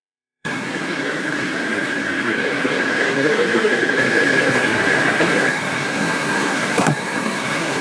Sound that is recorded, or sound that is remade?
remade